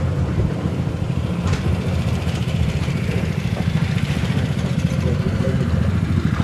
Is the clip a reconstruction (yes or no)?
yes